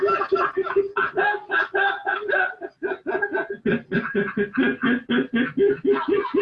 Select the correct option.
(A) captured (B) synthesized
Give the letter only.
A